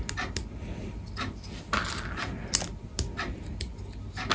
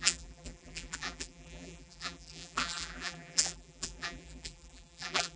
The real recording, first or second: first